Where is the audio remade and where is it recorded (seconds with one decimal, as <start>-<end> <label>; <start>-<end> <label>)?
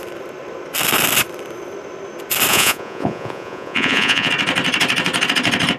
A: 0.0-2.5 recorded; 2.5-4.3 remade; 4.3-5.8 recorded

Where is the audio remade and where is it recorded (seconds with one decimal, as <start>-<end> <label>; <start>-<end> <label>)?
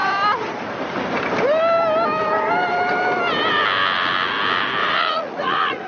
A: 0.0-4.8 recorded; 4.8-5.9 remade